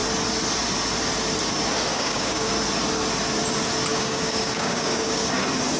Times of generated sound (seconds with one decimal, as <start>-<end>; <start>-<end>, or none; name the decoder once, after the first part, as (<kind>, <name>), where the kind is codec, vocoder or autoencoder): 1.9-2.5 (codec, DAC); 3.9-5.3